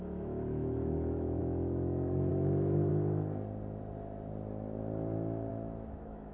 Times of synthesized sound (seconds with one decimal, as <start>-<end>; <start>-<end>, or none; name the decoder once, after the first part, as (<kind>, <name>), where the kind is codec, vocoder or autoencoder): 0.0-2.9 (autoencoder, DAC-VAE); 5.5-6.3